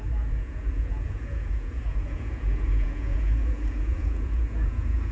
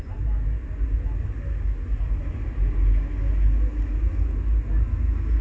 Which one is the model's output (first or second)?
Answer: first